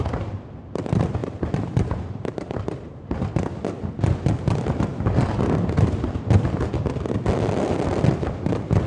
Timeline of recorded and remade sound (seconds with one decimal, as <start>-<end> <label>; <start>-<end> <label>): 0.0-1.2 recorded; 1.2-3.4 remade; 3.4-8.9 recorded